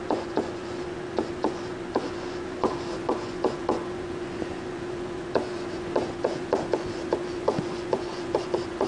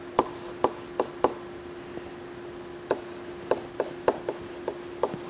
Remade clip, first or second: first